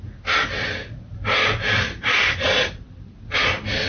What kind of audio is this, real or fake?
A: real